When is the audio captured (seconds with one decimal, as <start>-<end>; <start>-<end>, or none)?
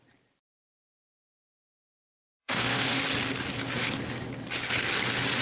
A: 0.0-2.4; 3.0-5.4